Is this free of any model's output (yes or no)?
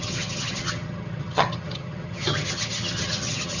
no